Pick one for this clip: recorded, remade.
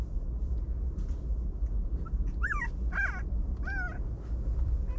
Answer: recorded